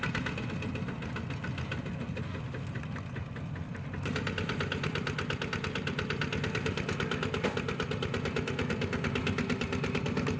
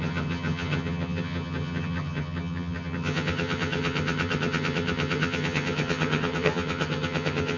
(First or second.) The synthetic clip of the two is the second